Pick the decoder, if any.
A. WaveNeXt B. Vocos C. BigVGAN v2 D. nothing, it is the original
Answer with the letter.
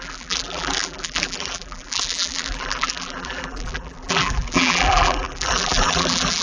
C